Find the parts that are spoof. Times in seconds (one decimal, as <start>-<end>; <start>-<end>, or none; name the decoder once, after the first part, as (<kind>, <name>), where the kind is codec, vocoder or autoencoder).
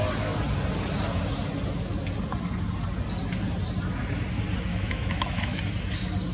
4.7-5.6 (autoencoder, DAC-VAE)